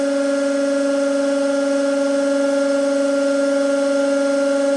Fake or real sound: real